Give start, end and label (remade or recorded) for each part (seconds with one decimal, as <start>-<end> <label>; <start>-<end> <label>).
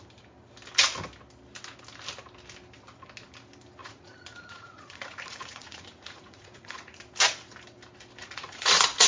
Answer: 0.0-3.8 recorded; 3.8-7.0 remade; 7.0-8.2 recorded; 8.2-9.1 remade